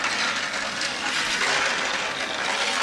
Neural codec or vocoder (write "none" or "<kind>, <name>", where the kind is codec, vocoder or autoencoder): none